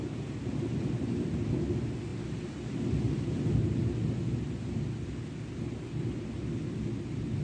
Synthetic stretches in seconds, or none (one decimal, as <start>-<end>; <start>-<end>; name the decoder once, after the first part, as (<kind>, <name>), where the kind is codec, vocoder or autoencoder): none